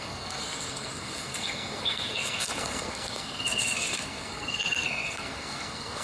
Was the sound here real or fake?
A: fake